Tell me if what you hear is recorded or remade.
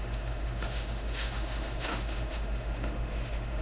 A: remade